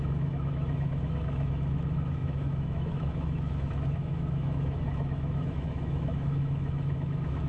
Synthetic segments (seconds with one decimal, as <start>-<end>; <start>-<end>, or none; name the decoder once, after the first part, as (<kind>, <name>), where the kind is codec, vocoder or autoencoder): 0.0-7.5 (autoencoder, DAC-VAE)